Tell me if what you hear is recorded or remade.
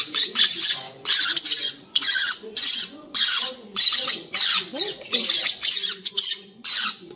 remade